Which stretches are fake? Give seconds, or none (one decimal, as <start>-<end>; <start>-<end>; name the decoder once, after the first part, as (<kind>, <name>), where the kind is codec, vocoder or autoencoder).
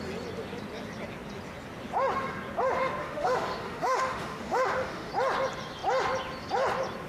3.0-5.1 (autoencoder, DAC-VAE)